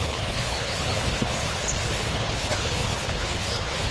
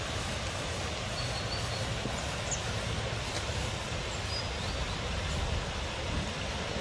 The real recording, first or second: second